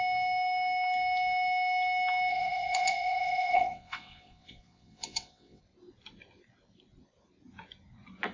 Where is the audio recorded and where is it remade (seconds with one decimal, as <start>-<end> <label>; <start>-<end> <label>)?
0.0-2.3 recorded; 2.3-5.6 remade; 5.6-8.3 recorded